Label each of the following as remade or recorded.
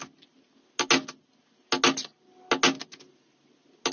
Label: recorded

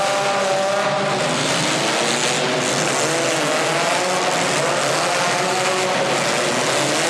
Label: recorded